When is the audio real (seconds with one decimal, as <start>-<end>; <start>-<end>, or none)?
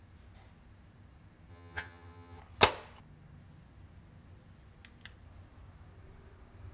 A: 0.0-1.5; 2.4-6.7